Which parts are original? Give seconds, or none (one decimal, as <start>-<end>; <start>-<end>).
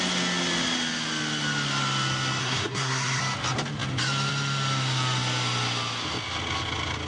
0.0-2.4; 3.2-7.1